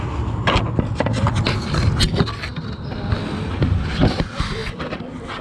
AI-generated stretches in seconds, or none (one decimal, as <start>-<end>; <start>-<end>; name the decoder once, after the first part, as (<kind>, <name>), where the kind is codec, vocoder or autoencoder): none